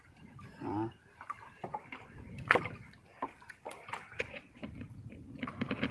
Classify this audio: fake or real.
real